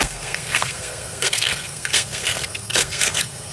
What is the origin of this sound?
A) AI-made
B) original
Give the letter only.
A